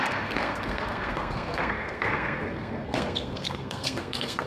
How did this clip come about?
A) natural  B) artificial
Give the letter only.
B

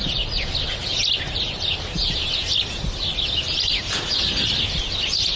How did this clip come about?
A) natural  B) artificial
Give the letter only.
A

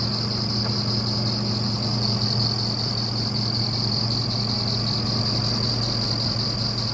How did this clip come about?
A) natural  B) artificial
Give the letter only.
A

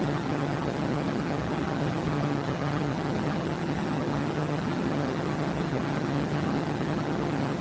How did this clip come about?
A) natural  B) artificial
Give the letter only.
B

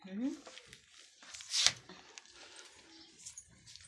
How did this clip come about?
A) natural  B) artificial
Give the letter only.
A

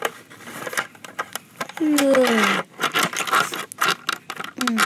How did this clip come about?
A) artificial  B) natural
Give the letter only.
B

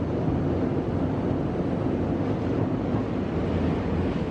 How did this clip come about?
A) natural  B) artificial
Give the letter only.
A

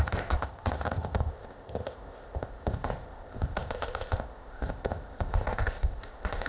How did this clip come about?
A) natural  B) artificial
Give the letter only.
B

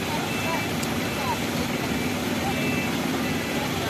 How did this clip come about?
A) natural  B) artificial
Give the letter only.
A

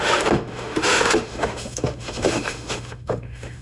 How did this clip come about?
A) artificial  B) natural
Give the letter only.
A